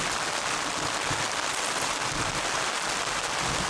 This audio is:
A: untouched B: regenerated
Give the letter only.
A